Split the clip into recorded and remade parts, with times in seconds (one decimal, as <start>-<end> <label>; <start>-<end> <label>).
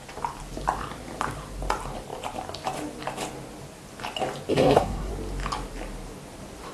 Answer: 0.0-4.5 recorded; 4.5-5.1 remade; 5.1-6.7 recorded